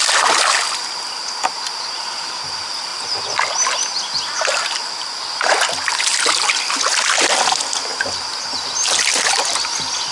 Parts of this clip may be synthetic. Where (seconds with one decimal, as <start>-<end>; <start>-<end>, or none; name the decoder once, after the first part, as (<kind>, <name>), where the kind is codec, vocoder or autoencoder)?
none